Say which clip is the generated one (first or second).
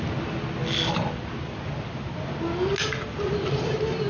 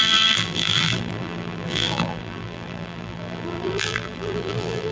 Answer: second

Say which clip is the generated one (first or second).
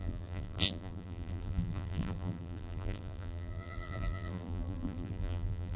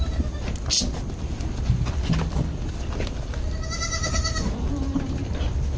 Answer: first